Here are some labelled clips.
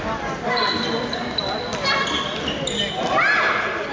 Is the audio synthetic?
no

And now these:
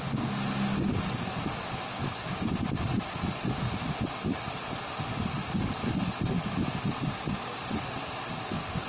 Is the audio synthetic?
no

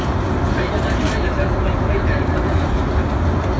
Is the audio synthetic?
no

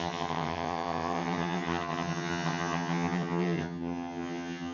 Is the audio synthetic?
yes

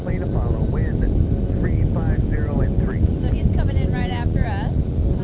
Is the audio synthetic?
no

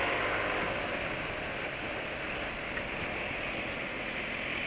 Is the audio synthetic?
no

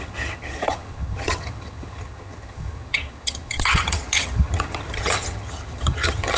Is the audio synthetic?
yes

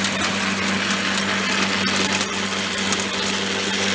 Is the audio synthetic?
no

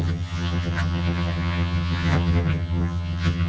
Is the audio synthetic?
yes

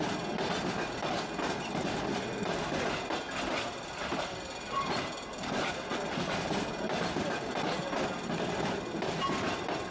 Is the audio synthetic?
no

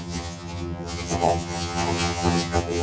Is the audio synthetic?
yes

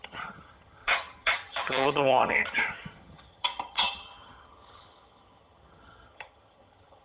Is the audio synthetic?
yes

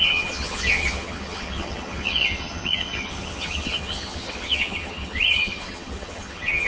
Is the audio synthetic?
yes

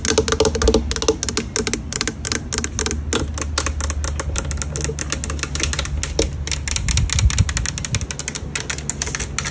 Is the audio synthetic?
no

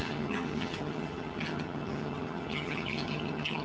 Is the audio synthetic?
yes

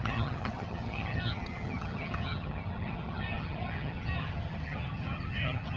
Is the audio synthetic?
yes